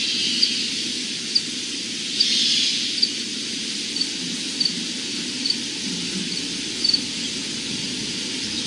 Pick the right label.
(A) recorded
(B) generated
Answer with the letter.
A